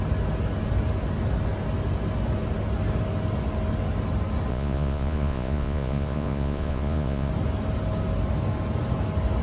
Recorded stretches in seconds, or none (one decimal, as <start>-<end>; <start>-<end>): 0.0-4.5; 7.3-9.4